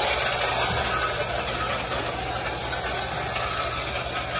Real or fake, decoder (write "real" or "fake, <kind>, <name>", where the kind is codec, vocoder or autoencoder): real